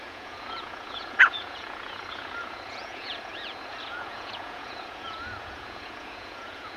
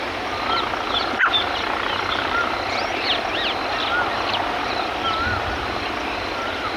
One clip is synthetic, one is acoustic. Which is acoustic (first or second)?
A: second